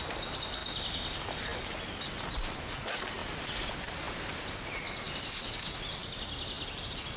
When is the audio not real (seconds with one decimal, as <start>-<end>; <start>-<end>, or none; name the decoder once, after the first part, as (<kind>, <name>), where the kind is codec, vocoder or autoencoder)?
none